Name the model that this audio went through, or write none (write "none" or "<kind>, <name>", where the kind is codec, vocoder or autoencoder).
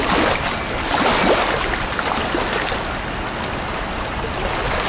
none